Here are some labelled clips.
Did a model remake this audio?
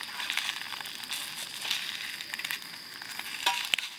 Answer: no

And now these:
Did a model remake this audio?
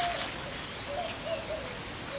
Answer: no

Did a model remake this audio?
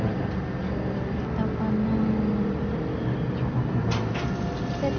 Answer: no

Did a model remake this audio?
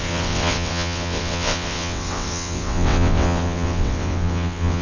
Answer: yes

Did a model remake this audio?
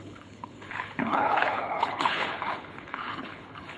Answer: yes